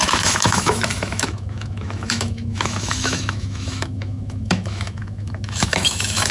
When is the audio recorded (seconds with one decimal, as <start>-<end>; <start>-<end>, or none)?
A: none